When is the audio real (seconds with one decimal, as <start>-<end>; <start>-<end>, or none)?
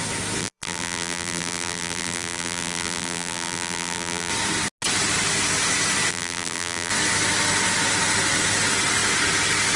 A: 0.0-0.4; 4.3-6.1; 6.9-9.8